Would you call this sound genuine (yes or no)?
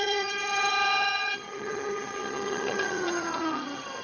no